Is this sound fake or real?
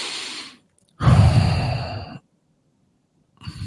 real